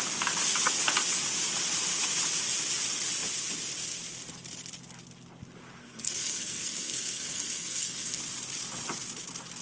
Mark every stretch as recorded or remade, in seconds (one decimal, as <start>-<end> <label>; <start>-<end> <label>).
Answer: 0.0-5.8 recorded; 5.8-8.2 remade; 8.2-9.6 recorded